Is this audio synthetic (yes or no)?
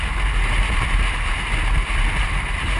yes